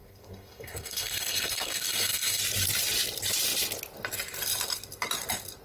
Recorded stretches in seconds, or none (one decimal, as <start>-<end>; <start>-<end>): 2.4-5.6